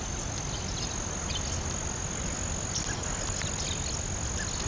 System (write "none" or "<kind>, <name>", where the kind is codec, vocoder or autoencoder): none